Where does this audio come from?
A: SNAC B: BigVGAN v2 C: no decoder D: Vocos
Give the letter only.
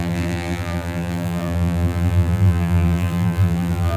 B